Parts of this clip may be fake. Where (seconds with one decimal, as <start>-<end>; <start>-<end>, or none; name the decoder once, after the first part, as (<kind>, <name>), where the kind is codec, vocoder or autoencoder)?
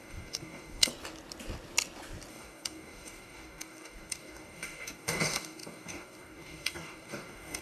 0.0-0.9 (codec, DAC); 2.3-7.6